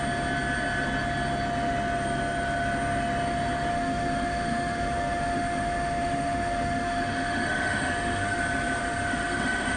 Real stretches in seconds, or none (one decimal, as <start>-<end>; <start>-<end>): 0.0-3.7; 8.4-8.8

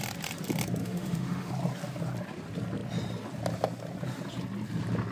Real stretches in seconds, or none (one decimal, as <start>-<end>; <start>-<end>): 0.0-0.8; 1.5-5.1

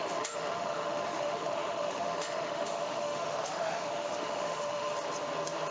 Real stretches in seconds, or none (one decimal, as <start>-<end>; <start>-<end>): 4.9-5.7

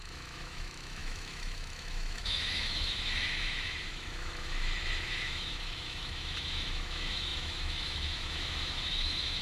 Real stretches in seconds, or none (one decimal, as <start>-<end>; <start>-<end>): none

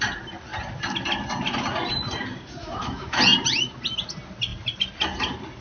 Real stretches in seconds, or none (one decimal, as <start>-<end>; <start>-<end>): 0.0-2.6; 3.2-5.6

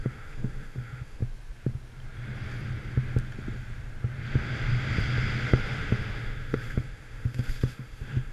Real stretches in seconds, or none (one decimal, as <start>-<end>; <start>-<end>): 1.2-5.5